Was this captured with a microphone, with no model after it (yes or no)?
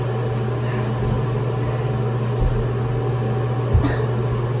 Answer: yes